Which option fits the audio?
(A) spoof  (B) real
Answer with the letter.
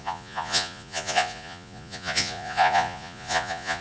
A